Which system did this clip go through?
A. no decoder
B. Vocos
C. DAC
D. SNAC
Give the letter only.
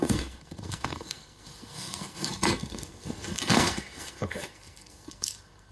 D